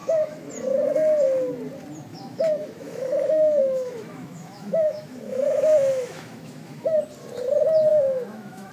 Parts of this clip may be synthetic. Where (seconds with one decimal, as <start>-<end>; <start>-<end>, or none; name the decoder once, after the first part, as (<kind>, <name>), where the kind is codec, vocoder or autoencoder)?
0.0-0.5 (autoencoder, DAC-VAE); 2.1-7.0; 7.9-8.7